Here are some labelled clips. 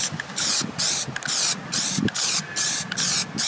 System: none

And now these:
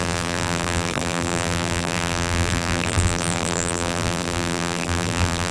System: vocoder, BigVGAN v2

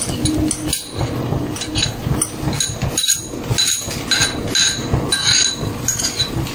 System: none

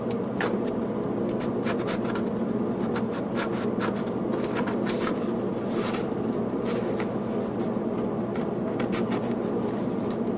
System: vocoder, BigVGAN v2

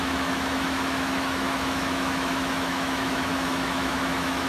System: autoencoder, DAC-VAE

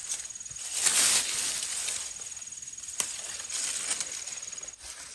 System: none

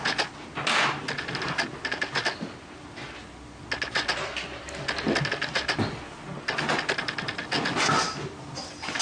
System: none